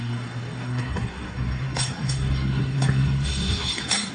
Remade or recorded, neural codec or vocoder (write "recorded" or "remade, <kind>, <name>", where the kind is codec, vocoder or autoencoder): remade, codec, SNAC